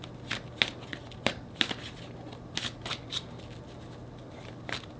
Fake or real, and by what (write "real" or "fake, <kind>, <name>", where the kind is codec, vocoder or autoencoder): real